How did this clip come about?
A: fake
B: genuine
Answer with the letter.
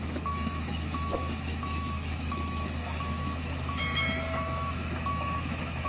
A